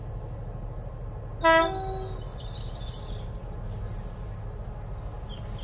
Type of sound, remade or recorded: recorded